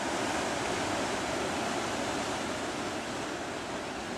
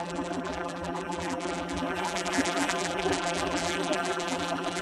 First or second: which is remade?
second